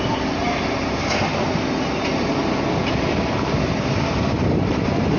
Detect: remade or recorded remade